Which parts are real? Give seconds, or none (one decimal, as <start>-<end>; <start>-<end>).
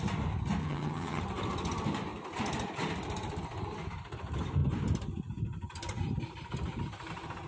0.0-0.6; 1.2-7.5